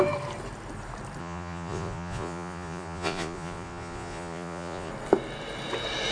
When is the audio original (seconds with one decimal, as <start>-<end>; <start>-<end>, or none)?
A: 0.0-1.2; 4.9-6.1